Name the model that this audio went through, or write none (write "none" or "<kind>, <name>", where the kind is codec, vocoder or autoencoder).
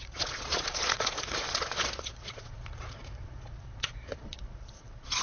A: vocoder, Vocos